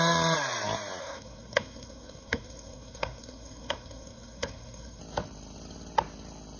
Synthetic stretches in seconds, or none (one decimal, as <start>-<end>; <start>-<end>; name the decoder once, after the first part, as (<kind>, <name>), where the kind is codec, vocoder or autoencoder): 1.0-5.0 (codec, SNAC)